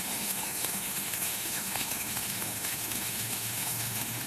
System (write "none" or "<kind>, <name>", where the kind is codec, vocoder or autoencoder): autoencoder, DAC-VAE